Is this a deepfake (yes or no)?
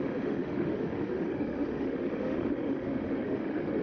yes